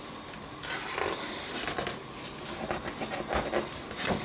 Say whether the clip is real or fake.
real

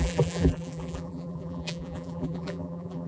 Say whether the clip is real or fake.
fake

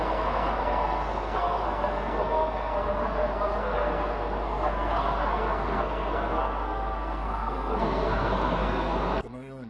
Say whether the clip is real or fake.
fake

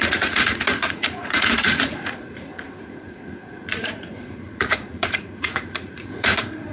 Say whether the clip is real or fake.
fake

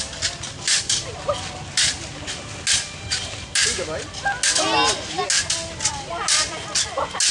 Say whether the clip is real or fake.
real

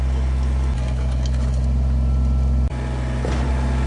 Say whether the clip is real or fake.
real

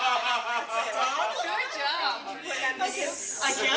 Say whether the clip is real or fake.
real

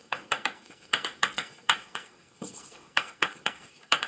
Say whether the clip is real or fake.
fake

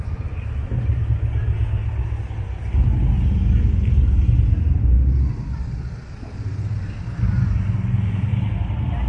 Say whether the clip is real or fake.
real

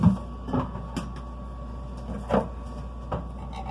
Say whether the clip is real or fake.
real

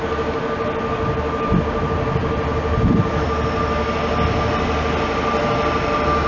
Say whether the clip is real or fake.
real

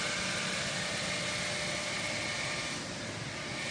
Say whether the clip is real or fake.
real